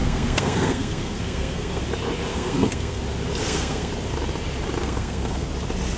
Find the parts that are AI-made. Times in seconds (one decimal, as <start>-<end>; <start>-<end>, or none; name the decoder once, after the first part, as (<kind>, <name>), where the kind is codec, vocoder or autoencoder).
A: 0.0-1.8 (codec, SNAC); 2.3-3.0; 3.4-3.9; 4.8-5.5